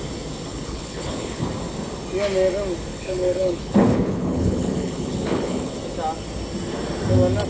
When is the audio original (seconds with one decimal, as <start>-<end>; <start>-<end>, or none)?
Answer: 0.0-0.5; 1.4-2.9; 5.8-7.5